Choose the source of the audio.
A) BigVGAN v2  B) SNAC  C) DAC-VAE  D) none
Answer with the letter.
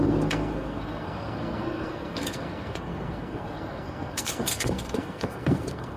B